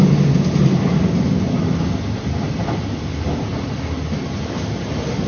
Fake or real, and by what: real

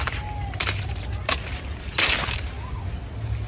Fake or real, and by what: real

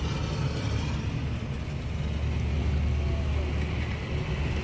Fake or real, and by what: real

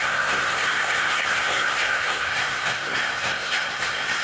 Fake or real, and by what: fake, codec, SNAC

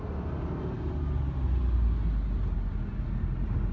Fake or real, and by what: real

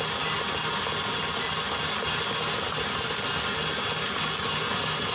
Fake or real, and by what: real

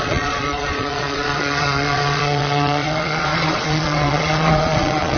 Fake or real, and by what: fake, vocoder, Vocos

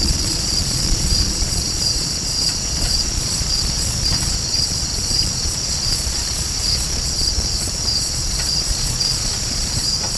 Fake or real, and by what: fake, vocoder, Vocos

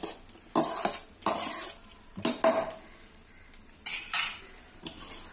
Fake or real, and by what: real